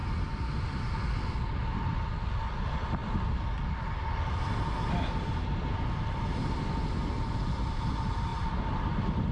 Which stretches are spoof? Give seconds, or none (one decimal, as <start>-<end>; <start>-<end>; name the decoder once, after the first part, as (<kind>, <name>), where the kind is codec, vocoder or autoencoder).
none